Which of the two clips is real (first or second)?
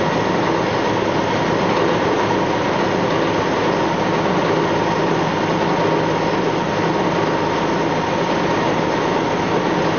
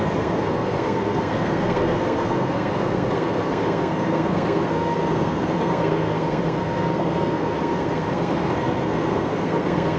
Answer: first